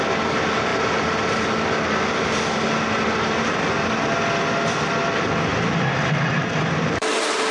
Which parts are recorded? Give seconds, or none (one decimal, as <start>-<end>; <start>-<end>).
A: 0.0-5.5; 7.1-7.5